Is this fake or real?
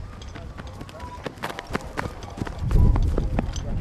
real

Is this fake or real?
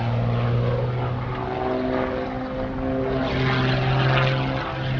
real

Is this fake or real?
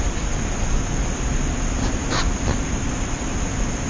real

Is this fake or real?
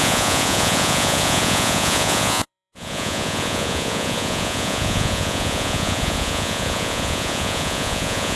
fake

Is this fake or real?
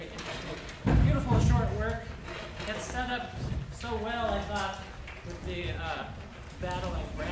real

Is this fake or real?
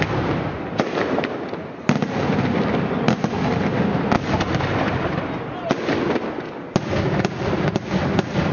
real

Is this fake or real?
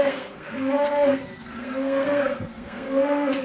fake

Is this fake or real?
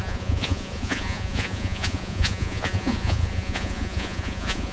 fake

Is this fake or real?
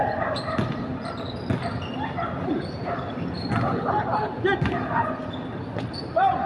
real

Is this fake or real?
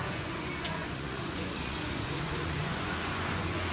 fake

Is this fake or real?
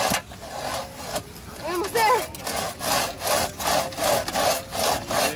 real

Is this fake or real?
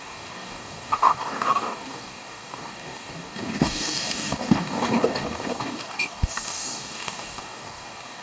fake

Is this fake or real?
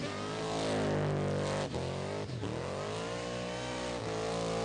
real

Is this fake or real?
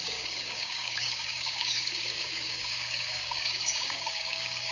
fake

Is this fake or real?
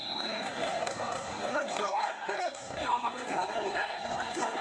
fake